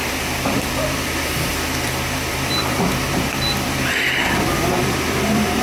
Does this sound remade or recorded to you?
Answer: remade